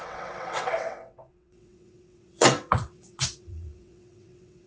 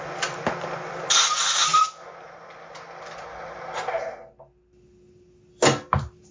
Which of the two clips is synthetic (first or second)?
first